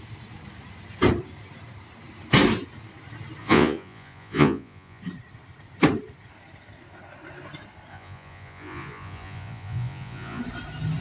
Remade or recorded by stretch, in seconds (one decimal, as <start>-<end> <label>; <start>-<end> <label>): 0.0-3.4 recorded; 3.4-5.0 remade; 5.0-7.9 recorded; 7.9-10.4 remade; 10.4-11.0 recorded